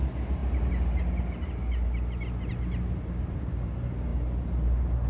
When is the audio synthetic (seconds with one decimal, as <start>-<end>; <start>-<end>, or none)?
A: none